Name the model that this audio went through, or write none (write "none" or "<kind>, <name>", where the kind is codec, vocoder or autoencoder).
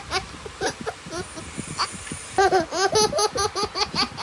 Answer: none